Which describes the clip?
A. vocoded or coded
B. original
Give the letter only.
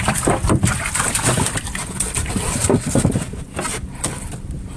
A